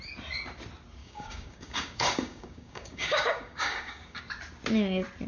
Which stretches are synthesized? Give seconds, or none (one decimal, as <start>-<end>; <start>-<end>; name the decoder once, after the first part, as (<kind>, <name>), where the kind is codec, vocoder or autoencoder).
1.0-4.2 (codec, DAC)